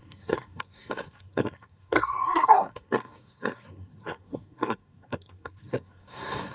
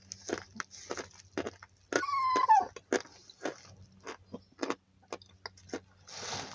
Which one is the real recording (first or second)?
second